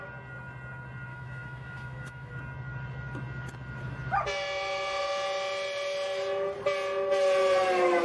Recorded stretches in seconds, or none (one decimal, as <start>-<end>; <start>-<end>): 0.0-1.1; 2.3-8.0